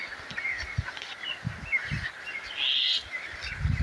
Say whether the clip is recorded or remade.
recorded